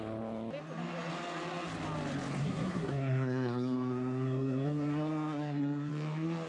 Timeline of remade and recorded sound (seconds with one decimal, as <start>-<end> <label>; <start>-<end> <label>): 0.0-2.4 recorded; 2.4-5.9 remade; 5.9-6.5 recorded